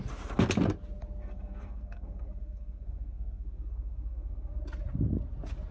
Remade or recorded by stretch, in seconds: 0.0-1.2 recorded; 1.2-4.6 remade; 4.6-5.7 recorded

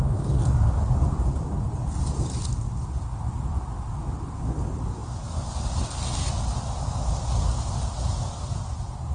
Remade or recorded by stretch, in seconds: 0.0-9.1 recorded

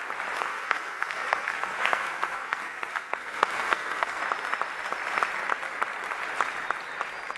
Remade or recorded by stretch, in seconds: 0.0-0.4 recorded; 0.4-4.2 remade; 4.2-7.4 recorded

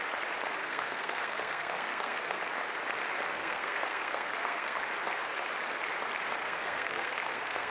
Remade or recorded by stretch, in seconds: 0.0-0.6 recorded; 0.6-2.4 remade; 2.4-3.3 recorded; 3.3-4.8 remade; 4.8-6.4 recorded; 6.4-7.7 remade

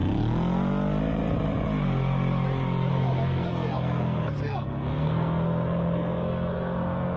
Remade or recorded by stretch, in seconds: 0.0-2.9 recorded; 2.9-7.2 remade

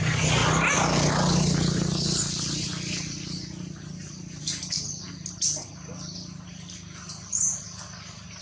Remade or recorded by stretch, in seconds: 0.0-8.4 recorded

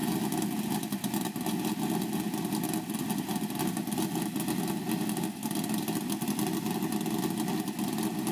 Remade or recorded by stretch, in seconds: 0.0-8.3 recorded